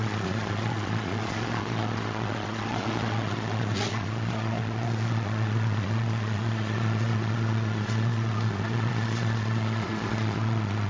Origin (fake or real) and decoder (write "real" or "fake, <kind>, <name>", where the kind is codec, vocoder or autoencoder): fake, vocoder, Vocos